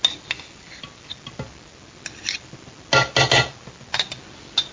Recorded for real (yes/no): yes